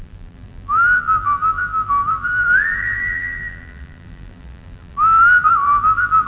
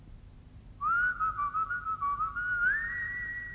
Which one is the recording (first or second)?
second